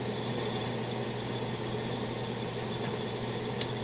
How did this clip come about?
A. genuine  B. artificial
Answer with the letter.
A